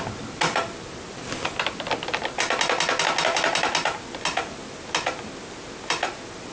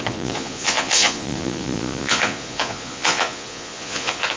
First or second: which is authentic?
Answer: first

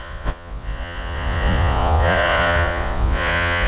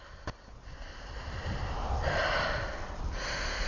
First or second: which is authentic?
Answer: second